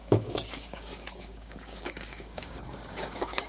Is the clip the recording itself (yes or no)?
no